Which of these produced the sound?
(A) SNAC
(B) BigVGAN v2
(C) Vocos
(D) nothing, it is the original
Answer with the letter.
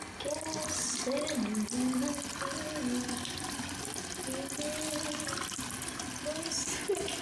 D